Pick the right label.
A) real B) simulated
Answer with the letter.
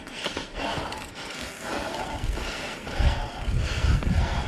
B